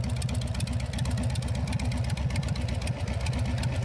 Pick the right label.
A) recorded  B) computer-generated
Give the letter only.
A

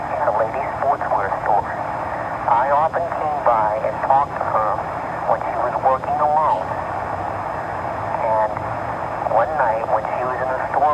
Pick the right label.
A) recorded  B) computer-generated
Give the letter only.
A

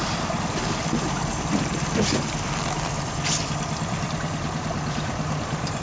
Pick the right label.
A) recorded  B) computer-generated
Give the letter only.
B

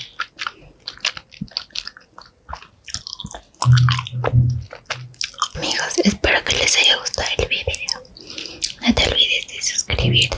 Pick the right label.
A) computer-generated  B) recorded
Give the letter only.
B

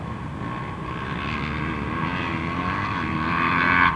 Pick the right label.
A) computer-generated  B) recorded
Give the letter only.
B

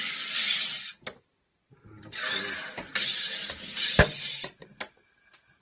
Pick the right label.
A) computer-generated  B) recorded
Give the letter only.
B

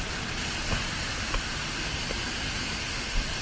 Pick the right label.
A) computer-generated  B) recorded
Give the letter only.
B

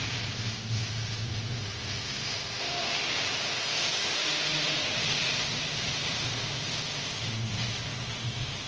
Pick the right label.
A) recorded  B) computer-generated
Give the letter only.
A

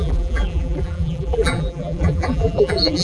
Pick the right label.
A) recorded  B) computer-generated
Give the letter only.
B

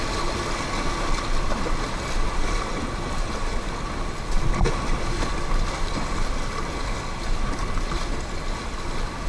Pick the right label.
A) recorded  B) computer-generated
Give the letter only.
A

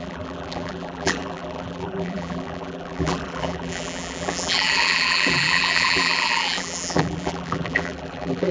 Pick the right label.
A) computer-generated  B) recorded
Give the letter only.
A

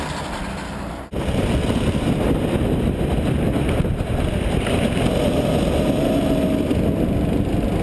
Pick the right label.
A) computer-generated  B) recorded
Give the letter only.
B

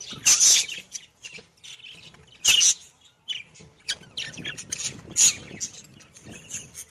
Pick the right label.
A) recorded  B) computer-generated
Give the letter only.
A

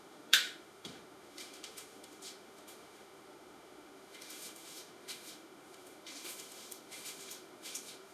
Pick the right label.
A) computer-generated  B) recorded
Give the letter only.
A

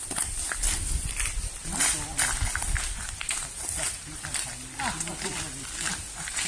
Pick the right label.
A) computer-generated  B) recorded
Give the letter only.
B